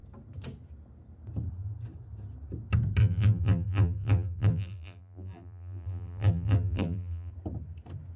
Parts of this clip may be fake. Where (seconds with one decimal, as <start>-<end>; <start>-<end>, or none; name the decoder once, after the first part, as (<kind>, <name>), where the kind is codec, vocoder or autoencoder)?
3.0-7.3 (vocoder, BigVGAN v2)